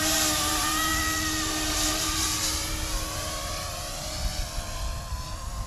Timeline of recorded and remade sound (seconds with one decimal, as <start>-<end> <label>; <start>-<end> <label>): 0.0-0.9 remade; 0.9-1.5 recorded; 1.5-4.3 remade; 4.3-5.7 recorded